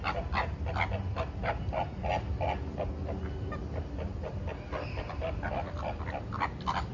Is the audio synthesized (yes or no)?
no